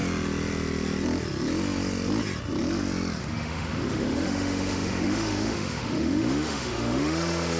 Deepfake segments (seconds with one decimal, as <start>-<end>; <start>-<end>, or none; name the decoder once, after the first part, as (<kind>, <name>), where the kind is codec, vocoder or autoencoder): 3.2-7.6 (autoencoder, DAC-VAE)